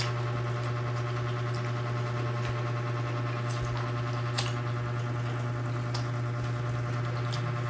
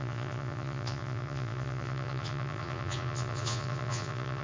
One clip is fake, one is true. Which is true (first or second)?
first